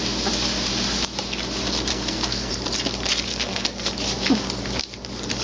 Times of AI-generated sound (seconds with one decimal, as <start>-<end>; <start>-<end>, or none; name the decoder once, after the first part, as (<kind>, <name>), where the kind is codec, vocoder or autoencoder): 1.9-2.5 (codec, SNAC); 3.3-3.9